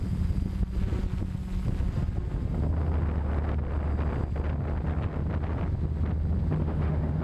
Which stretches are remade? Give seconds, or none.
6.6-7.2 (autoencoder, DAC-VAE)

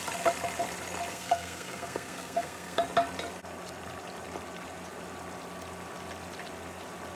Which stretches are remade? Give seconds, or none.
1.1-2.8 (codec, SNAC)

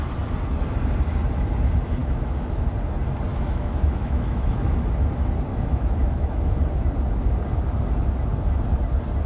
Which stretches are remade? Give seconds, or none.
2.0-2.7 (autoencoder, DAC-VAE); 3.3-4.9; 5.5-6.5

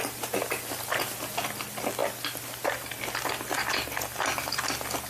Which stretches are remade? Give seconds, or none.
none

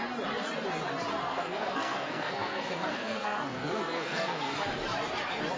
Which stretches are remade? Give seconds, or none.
1.1-4.5 (codec, SNAC)

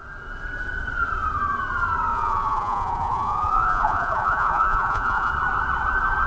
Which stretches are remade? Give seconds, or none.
2.1-5.3 (vocoder, Vocos)

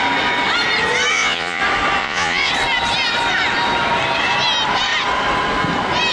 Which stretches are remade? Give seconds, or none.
1.1-1.6 (vocoder, Vocos); 2.0-2.5

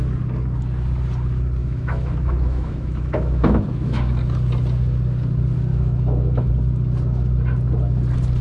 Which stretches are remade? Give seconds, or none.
1.6-4.1 (autoencoder, DAC-VAE); 5.7-6.5